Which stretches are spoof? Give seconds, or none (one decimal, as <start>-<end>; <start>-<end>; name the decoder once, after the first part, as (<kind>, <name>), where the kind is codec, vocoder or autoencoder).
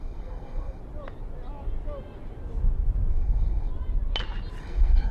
0.0-0.8 (codec, SNAC); 3.1-3.7; 4.6-5.1